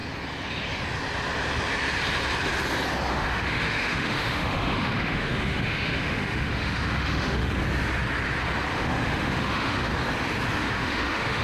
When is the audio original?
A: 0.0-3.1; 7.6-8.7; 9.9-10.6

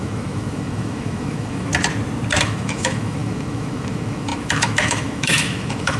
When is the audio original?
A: 1.7-2.4